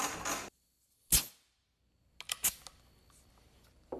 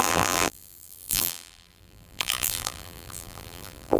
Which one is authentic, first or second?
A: first